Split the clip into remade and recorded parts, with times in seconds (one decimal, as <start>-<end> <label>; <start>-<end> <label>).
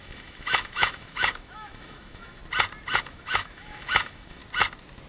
0.0-2.4 remade; 2.4-3.0 recorded; 3.0-4.4 remade; 4.4-5.1 recorded